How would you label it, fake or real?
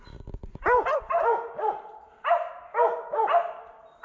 real